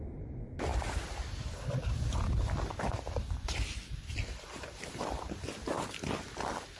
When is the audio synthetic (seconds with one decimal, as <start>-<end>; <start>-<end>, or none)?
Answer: none

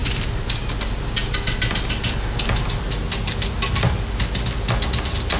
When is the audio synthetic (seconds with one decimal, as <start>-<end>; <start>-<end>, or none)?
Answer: none

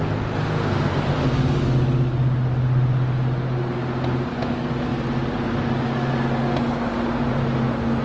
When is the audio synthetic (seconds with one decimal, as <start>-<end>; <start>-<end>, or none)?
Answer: none

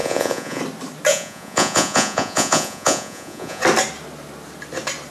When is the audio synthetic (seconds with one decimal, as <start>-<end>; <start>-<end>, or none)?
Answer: 0.0-0.6; 1.1-3.6

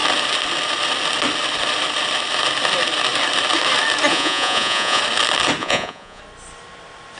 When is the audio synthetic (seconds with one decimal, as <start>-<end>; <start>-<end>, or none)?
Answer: 4.1-5.0; 5.6-6.2